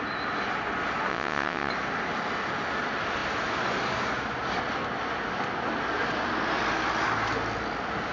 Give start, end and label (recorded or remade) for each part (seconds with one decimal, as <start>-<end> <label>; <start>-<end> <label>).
0.0-1.1 recorded; 1.1-1.7 remade; 1.7-8.1 recorded